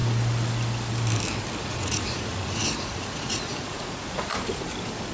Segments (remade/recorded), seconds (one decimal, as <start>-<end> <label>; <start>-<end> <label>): 0.0-1.6 recorded; 1.6-4.2 remade; 4.2-5.1 recorded